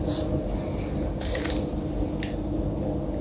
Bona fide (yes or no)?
yes